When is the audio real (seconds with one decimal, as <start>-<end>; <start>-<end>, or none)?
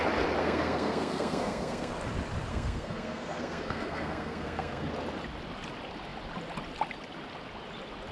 0.0-0.4; 1.9-2.5; 4.9-8.1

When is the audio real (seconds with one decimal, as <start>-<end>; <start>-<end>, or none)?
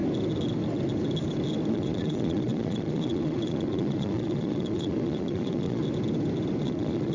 0.0-1.7; 5.8-6.6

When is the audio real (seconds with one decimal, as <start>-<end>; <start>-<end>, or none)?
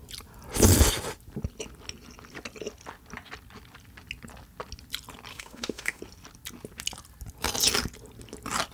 0.0-5.3; 6.0-8.7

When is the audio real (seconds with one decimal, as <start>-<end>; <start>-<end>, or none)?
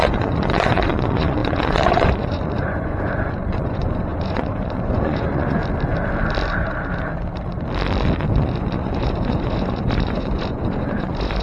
5.6-8.3